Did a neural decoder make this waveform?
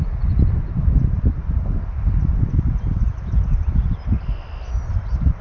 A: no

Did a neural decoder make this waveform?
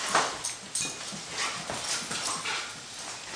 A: no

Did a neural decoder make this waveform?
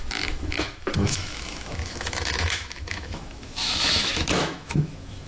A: yes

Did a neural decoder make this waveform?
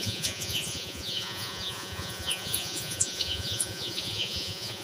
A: yes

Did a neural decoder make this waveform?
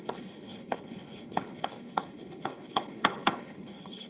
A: yes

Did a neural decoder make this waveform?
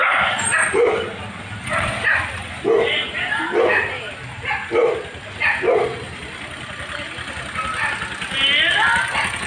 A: no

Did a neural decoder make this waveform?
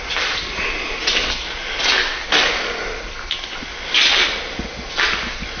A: no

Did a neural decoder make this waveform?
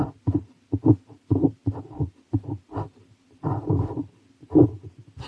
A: no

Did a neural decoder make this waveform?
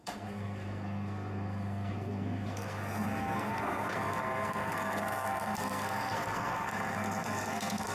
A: yes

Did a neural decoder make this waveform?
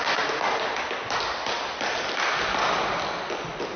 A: no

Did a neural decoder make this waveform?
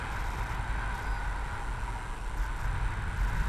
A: no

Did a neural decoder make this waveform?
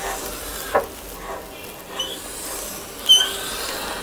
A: no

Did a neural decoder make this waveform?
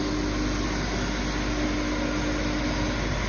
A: no